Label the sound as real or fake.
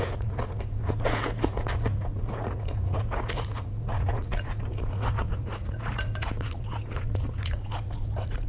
fake